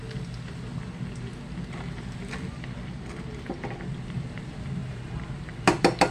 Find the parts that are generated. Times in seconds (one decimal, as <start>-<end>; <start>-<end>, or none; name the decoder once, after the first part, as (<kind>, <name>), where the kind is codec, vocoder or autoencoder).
4.8-5.3 (vocoder, BigVGAN v2)